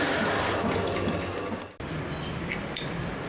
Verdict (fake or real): real